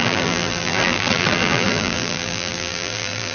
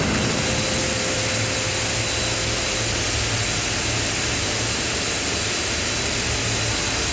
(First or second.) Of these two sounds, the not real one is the first